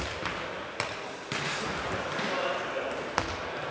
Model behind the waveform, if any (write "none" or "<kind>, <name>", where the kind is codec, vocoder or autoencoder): none